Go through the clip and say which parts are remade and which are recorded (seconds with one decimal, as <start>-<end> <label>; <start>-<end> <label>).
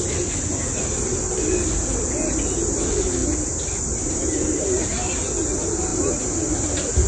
0.0-7.1 recorded